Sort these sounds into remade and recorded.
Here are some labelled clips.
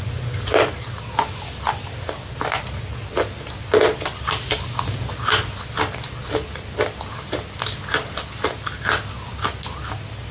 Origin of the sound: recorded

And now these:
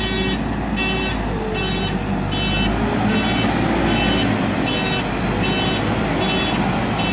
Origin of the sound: recorded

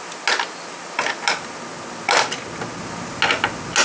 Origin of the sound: recorded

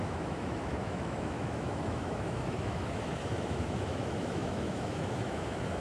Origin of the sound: remade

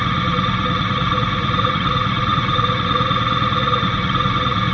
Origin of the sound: remade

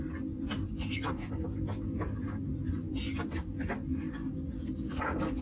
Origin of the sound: recorded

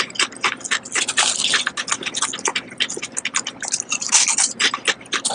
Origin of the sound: recorded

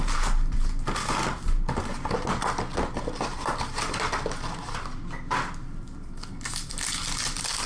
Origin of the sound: recorded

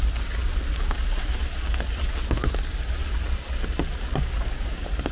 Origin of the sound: recorded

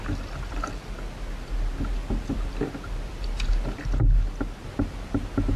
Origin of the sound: recorded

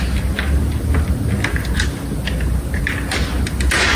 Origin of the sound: recorded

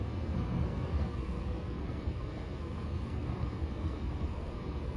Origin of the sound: remade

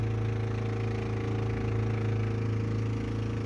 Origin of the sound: recorded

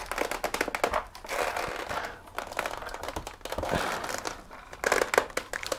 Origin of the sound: recorded